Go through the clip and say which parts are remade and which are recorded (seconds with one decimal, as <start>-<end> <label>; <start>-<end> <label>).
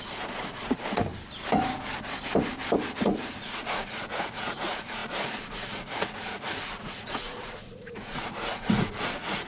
0.0-1.1 remade; 1.1-3.0 recorded; 3.0-9.5 remade